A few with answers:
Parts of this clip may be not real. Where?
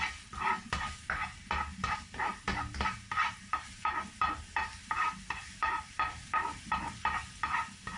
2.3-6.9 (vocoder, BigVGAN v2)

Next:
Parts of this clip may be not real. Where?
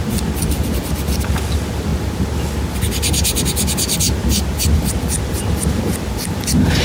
4.2-5.8 (vocoder, BigVGAN v2)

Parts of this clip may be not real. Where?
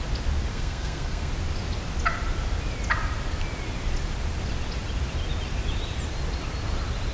0.5-1.3 (codec, SNAC)